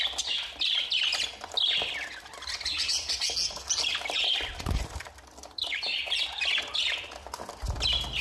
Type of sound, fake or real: real